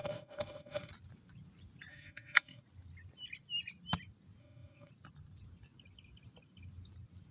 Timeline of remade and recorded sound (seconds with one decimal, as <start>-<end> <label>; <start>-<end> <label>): 0.0-0.9 remade; 0.9-1.9 recorded; 1.9-2.6 remade; 2.6-4.4 recorded; 4.4-4.9 remade; 4.9-7.3 recorded